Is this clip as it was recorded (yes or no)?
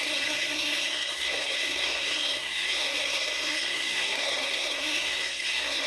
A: no